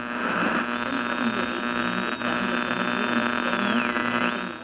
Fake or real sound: real